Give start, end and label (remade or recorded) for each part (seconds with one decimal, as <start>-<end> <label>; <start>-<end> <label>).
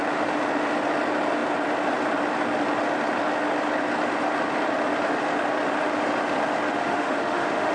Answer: 0.0-6.8 recorded; 6.8-7.7 remade